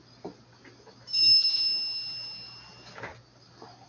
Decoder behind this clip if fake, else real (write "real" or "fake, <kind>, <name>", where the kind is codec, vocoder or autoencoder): real